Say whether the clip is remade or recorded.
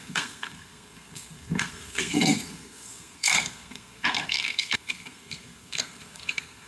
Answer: remade